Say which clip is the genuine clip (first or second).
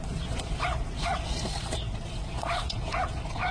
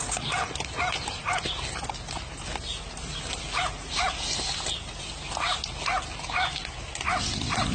second